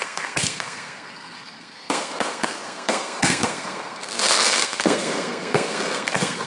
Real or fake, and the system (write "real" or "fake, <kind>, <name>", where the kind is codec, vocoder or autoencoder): fake, codec, SNAC